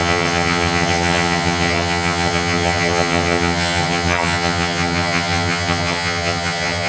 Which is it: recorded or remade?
remade